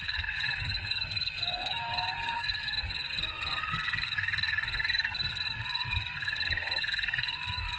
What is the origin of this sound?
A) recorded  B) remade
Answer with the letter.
B